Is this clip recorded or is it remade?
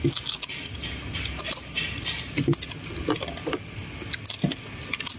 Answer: recorded